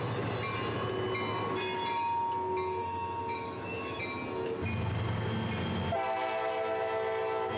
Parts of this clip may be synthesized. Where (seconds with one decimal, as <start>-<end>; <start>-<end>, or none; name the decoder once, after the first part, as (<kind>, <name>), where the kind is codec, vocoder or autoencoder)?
2.8-4.0 (autoencoder, DAC-VAE)